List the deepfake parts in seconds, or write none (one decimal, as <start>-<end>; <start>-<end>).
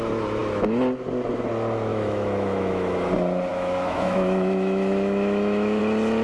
1.9-3.1; 3.5-5.8